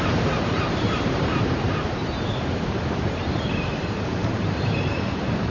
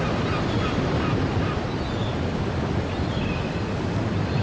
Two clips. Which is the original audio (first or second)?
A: second